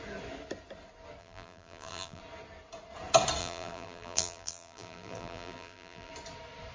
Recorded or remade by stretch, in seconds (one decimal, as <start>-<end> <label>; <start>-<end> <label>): 0.0-1.2 recorded; 1.2-2.2 remade; 2.2-3.4 recorded; 3.4-6.1 remade; 6.1-6.7 recorded